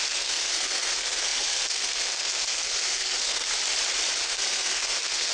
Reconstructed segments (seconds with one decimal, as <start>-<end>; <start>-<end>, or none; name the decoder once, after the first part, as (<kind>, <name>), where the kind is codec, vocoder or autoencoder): 0.0-3.6 (codec, SNAC); 4.2-5.3